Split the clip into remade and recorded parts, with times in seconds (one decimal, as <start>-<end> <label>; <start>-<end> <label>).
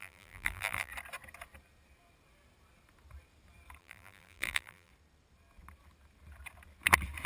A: 0.0-0.9 remade; 0.9-3.8 recorded; 3.8-4.9 remade; 4.9-7.3 recorded